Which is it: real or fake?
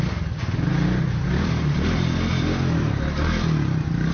real